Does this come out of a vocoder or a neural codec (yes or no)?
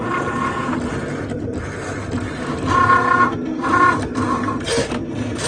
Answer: no